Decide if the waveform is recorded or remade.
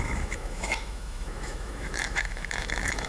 remade